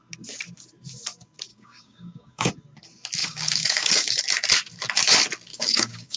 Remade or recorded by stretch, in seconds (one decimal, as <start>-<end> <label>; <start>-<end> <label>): 0.0-1.5 recorded; 1.5-2.5 remade; 2.5-3.2 recorded; 3.2-4.2 remade; 4.2-5.5 recorded; 5.5-6.2 remade